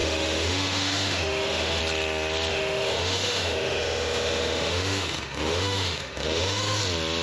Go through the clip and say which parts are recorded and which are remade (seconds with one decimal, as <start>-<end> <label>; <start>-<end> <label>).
0.0-1.8 remade; 1.8-2.5 recorded; 2.5-6.8 remade; 6.8-7.2 recorded